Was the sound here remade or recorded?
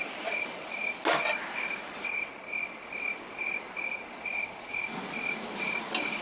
recorded